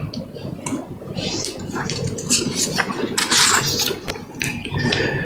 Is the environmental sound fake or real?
real